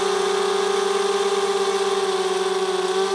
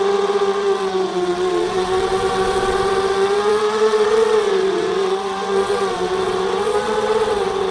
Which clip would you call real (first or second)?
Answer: first